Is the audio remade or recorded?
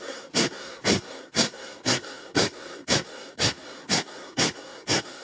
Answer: remade